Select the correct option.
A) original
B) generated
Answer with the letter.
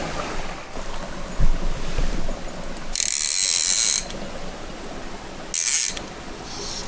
A